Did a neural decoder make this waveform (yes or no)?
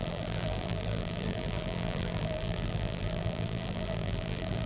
yes